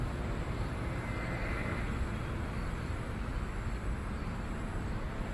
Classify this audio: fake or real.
fake